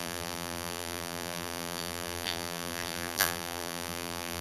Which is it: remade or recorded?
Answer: remade